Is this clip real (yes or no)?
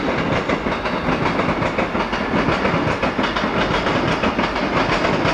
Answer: yes